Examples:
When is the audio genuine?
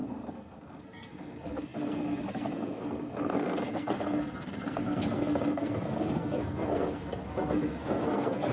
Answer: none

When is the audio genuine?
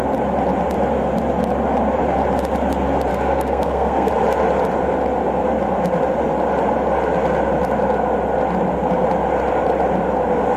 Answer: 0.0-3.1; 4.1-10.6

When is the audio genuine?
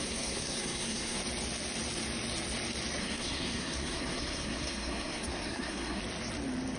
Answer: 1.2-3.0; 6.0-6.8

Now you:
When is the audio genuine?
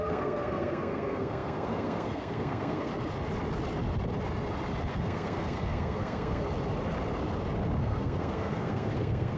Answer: 2.9-4.9; 6.4-7.8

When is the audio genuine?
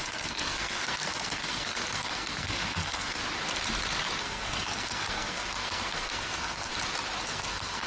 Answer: 3.2-4.2; 6.7-7.2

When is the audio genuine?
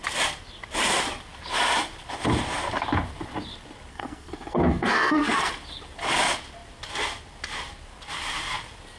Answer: 0.0-3.9; 5.5-9.0